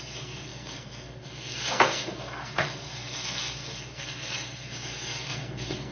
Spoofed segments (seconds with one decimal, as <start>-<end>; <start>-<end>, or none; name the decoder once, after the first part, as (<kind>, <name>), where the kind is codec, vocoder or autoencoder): 0.0-5.9 (codec, SNAC)